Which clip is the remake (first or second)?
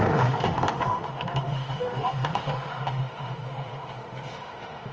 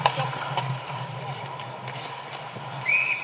first